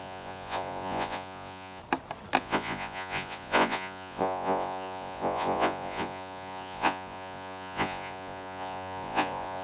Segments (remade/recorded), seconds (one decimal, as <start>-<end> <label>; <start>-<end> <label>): 0.0-1.8 remade; 1.8-2.4 recorded; 2.4-9.6 remade